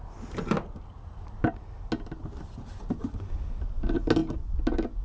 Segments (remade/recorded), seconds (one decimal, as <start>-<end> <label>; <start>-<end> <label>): 0.0-5.0 recorded